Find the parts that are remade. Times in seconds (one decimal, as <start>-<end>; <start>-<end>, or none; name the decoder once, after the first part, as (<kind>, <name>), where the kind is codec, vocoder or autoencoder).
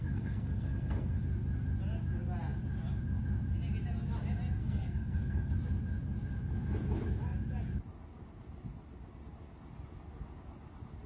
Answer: 0.0-1.2 (codec, SNAC); 4.6-5.5